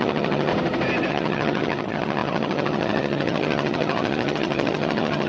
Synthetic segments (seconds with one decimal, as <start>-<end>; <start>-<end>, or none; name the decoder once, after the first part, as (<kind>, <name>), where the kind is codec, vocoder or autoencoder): 0.0-0.5 (vocoder, HiFi-GAN); 1.1-5.3